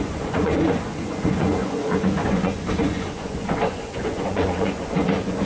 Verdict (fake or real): fake